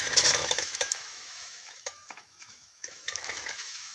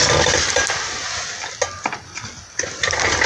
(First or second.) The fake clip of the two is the first